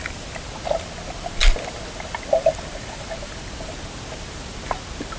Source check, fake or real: real